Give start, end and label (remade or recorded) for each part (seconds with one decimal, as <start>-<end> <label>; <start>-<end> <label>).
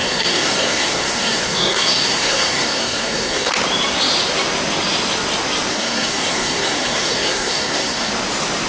0.0-3.5 remade; 3.5-5.7 recorded; 5.7-8.1 remade; 8.1-8.7 recorded